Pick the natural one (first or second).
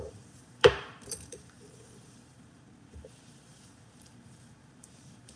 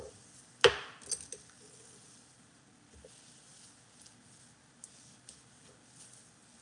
second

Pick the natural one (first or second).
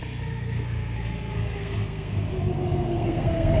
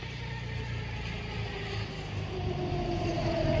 second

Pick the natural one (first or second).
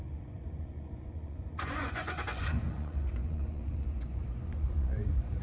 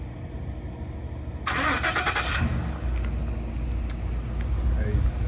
second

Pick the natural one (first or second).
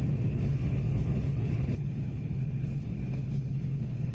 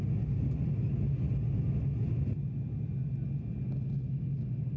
second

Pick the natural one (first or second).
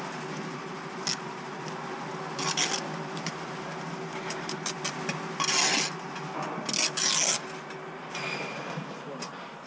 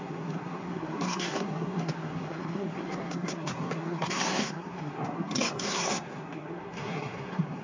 first